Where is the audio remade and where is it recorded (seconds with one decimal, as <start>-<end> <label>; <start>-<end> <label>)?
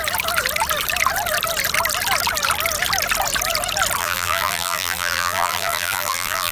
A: 0.0-4.0 recorded; 4.0-6.5 remade